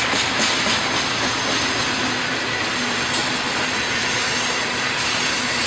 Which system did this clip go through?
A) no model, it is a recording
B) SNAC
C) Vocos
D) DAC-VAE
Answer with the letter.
A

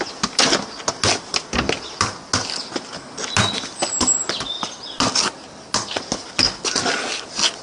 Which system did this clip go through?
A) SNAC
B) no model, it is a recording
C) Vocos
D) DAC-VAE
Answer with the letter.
B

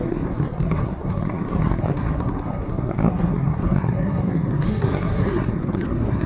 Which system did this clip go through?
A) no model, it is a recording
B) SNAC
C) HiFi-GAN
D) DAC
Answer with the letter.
B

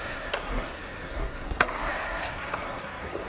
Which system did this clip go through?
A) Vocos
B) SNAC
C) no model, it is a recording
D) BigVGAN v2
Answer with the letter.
B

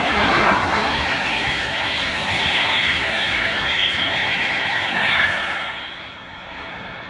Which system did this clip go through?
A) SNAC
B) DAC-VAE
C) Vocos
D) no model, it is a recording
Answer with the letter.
A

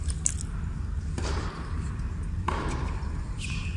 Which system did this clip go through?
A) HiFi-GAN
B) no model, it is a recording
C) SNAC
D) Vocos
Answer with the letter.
B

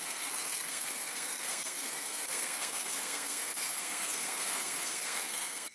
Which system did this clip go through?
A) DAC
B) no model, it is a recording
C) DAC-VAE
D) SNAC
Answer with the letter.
D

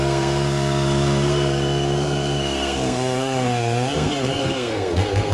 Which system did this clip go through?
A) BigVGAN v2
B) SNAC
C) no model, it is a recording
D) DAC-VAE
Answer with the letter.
B